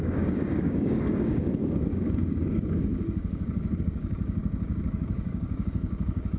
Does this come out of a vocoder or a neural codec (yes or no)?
yes